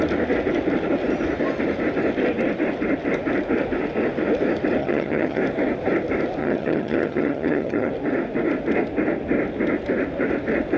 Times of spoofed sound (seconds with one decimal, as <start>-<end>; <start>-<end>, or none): 4.8-5.4; 6.4-7.9